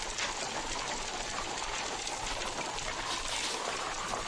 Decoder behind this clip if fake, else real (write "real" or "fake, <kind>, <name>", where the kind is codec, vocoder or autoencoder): real